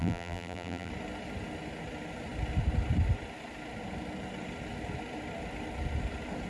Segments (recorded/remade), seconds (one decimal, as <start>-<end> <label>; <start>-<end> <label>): 0.0-0.9 remade; 0.9-6.5 recorded